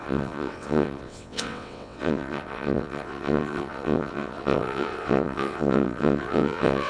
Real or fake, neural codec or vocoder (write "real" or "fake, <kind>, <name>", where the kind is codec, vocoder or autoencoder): fake, vocoder, WaveNeXt